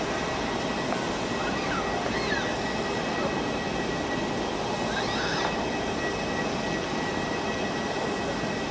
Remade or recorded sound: recorded